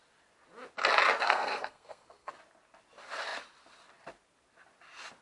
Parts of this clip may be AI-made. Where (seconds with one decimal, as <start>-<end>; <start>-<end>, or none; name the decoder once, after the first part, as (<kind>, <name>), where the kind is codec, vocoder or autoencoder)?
1.2-2.3 (codec, SNAC)